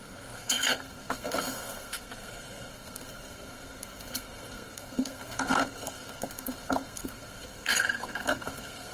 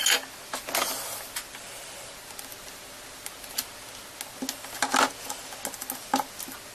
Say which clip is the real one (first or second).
second